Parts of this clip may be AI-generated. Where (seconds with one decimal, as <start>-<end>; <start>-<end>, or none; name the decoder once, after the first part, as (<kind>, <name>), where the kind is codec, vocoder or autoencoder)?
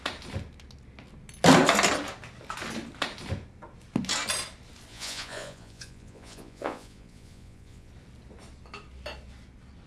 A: 4.9-7.9 (vocoder, Vocos)